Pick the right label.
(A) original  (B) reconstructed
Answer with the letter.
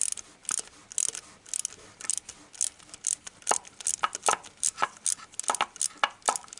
A